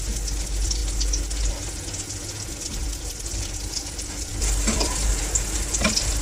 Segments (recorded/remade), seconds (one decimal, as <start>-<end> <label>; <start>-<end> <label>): 0.0-2.8 recorded; 2.8-3.8 remade; 3.8-4.3 recorded; 4.3-5.2 remade; 5.2-6.2 recorded